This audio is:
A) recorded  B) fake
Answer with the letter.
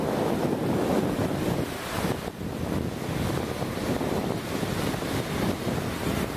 A